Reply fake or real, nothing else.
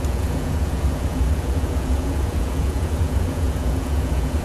fake